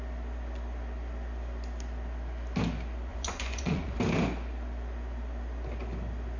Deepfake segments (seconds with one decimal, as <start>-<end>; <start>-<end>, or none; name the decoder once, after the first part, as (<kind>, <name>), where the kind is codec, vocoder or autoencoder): 3.1-4.0 (vocoder, Vocos)